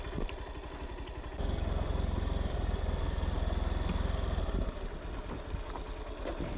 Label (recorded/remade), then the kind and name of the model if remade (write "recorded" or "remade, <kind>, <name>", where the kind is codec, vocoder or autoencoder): recorded